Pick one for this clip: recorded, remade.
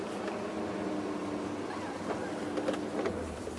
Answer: recorded